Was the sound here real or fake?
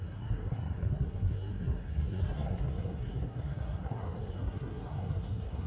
fake